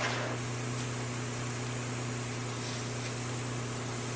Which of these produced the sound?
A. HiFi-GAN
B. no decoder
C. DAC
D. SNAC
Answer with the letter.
B